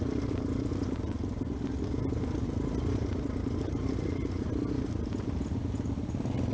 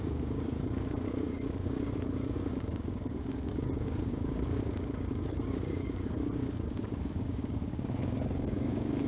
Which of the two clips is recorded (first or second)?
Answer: first